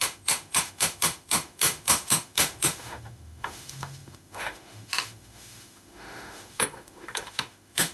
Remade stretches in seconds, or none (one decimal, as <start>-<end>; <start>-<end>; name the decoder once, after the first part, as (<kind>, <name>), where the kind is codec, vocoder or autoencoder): 0.0-7.9 (autoencoder, DAC-VAE)

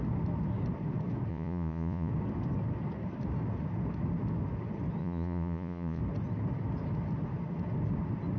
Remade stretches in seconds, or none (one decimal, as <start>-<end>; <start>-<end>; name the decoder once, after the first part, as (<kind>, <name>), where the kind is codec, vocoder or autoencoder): 1.3-2.1 (vocoder, Vocos); 5.0-6.0

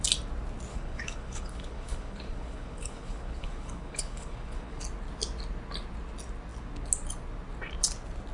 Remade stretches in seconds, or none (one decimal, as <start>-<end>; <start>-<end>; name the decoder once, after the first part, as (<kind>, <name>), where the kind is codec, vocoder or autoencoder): 0.7-4.8 (codec, HILCodec)

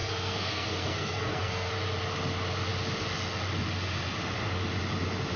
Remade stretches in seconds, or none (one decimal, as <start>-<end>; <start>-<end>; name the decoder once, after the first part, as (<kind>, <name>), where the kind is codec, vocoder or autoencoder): 0.0-1.7 (codec, SNAC)

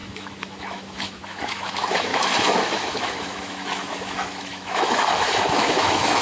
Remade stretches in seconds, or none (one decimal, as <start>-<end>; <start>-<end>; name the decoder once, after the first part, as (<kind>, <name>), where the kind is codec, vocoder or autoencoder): 0.0-6.2 (autoencoder, DAC-VAE)

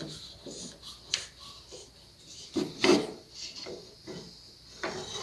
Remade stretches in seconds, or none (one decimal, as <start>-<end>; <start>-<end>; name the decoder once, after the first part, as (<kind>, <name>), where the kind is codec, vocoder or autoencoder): none

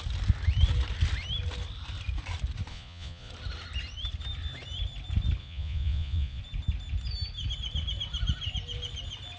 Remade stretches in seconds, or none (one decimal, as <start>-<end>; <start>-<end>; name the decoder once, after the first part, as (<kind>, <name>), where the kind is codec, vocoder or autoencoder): 2.7-3.3 (vocoder, Vocos); 5.4-6.4

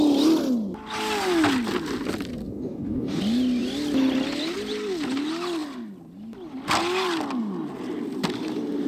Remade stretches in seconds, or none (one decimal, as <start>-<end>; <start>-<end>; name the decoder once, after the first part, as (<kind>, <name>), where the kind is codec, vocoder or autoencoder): 2.4-3.2 (codec, DAC)